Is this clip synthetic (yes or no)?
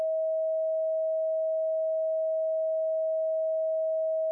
no